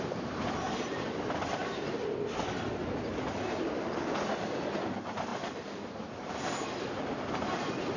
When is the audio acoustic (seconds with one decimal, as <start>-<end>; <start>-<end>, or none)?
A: 0.0-8.0